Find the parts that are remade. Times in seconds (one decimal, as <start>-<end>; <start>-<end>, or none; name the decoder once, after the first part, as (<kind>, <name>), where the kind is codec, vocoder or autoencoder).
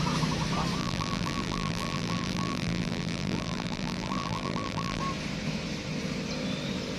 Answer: 0.8-5.0 (vocoder, BigVGAN v2)